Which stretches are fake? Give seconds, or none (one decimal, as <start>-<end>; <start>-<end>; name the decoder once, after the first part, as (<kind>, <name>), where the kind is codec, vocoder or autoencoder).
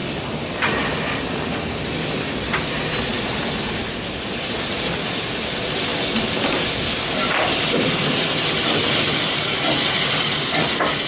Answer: none